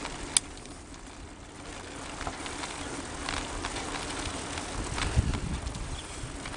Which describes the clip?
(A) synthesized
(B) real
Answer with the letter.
B